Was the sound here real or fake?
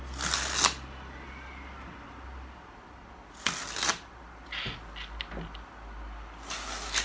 real